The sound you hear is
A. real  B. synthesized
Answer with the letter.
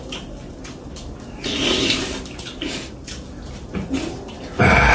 B